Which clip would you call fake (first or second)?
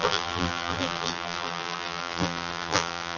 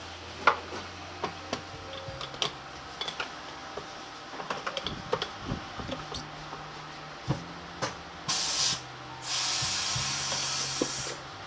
first